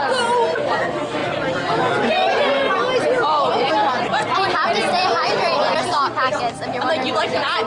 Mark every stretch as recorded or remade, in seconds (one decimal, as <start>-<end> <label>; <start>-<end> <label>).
0.0-7.7 recorded